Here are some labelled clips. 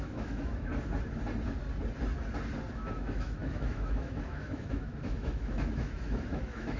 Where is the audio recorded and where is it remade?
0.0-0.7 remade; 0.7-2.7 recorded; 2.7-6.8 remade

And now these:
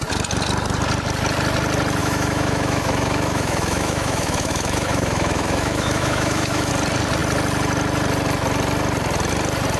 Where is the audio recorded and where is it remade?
0.0-2.0 recorded; 2.0-6.7 remade; 6.7-9.8 recorded